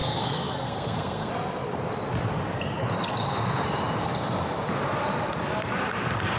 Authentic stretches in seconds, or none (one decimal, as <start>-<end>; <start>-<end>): 1.3-6.4